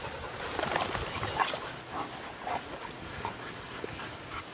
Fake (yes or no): no